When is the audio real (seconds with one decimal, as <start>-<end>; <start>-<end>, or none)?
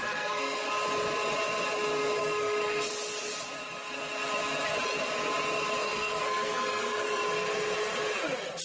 0.7-2.2; 2.9-5.8; 7.2-8.6